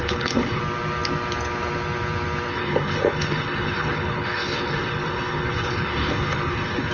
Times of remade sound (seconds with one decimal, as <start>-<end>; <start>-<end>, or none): 0.0-0.6; 2.5-6.9